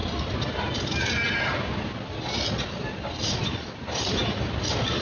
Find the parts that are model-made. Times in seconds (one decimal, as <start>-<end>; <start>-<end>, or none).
none